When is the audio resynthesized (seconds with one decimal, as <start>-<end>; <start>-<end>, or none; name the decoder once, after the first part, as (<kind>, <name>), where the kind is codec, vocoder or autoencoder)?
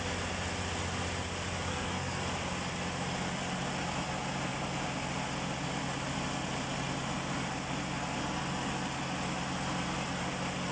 1.7-2.2 (codec, SNAC)